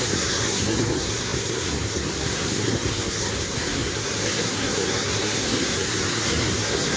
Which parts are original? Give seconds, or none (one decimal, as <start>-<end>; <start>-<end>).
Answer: none